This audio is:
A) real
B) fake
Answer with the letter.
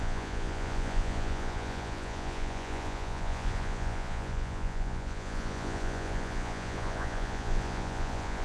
B